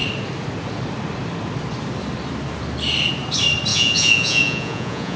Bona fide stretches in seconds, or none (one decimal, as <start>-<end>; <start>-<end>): 0.0-3.7